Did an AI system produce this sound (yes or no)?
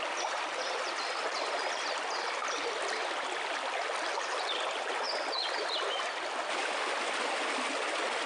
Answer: no